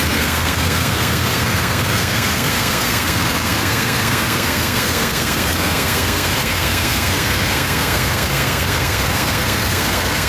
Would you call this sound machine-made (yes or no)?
yes